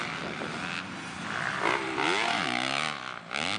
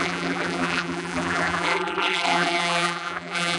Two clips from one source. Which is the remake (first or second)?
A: second